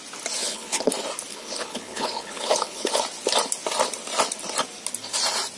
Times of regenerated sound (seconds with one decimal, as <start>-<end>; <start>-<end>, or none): 0.4-0.9; 1.3-3.0